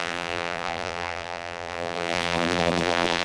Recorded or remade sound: remade